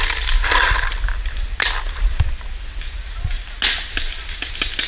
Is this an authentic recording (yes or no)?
yes